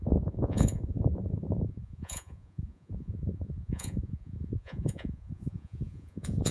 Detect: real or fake fake